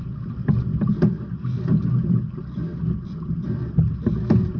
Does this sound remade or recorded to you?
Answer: recorded